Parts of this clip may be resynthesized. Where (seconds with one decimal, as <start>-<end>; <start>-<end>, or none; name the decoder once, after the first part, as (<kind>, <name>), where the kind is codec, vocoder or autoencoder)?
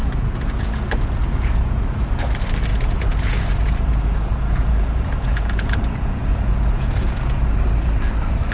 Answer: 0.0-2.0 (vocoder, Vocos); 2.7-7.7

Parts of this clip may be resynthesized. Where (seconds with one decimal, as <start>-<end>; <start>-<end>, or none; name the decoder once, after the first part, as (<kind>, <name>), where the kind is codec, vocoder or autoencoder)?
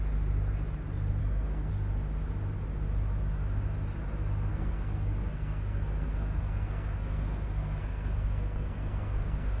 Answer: 1.2-1.7 (codec, SNAC); 4.5-9.6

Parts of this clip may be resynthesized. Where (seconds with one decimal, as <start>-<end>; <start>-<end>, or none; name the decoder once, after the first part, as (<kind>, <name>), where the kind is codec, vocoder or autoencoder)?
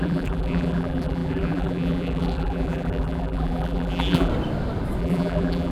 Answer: 0.0-4.3 (vocoder, BigVGAN v2); 5.0-5.7